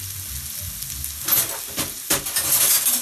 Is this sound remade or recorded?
recorded